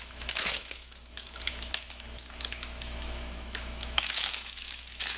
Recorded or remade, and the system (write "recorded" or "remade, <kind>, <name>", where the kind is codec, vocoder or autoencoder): remade, autoencoder, DAC-VAE